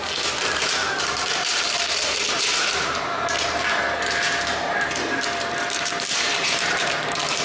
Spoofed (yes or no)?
yes